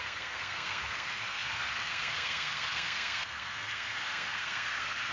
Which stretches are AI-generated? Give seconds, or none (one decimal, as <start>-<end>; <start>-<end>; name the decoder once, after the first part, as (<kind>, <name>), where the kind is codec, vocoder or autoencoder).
0.0-5.1 (codec, SNAC)